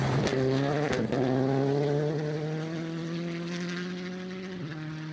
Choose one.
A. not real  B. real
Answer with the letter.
B